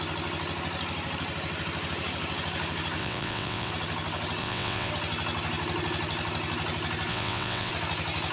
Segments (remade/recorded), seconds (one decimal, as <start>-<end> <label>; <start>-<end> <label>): 0.0-3.0 recorded; 3.0-3.7 remade; 3.7-4.4 recorded; 4.4-4.9 remade; 4.9-7.1 recorded; 7.1-7.7 remade; 7.7-8.3 recorded